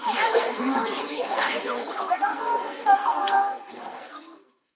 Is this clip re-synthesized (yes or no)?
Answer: yes